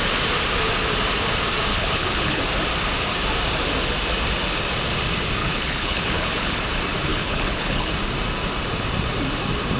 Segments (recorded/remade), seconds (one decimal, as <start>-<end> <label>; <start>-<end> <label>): 0.0-1.7 recorded; 1.7-2.4 remade; 2.4-5.4 recorded; 5.4-6.6 remade; 6.6-7.1 recorded; 7.1-7.9 remade; 7.9-9.8 recorded